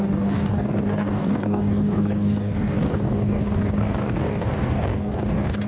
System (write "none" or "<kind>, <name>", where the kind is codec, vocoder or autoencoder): codec, DAC